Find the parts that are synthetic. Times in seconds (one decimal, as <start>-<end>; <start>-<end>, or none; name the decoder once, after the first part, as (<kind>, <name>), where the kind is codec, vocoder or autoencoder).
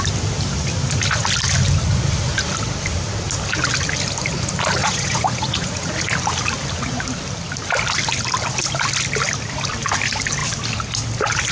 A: 4.8-6.0 (vocoder, Vocos)